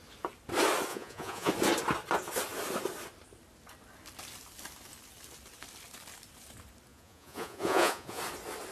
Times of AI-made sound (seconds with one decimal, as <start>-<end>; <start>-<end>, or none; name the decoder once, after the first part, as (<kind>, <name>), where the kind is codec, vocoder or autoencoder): 0.9-1.5 (vocoder, Vocos); 6.9-8.2